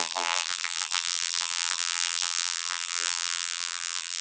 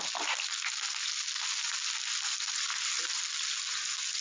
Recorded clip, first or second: second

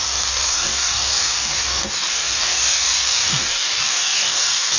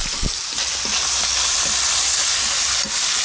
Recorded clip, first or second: second